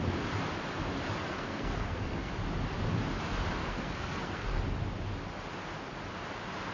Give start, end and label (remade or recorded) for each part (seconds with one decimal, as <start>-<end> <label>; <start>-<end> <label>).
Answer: 0.0-1.3 recorded; 1.3-2.3 remade; 2.3-3.6 recorded; 3.6-4.6 remade; 4.6-6.7 recorded